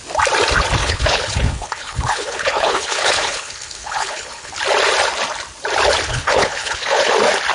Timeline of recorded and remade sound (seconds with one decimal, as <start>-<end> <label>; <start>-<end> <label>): 0.0-0.8 recorded; 0.8-4.5 remade; 4.5-6.1 recorded; 6.1-7.1 remade; 7.1-7.5 recorded